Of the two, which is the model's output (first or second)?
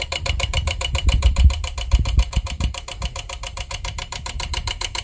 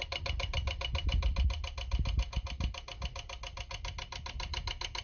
first